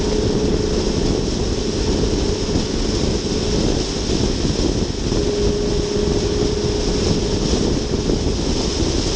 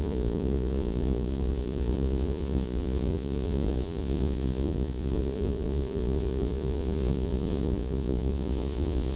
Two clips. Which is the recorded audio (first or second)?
first